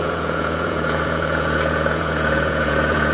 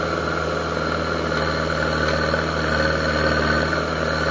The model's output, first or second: first